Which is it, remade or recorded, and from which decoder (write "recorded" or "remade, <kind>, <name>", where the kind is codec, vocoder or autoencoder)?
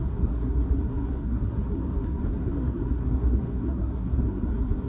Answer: remade, codec, SNAC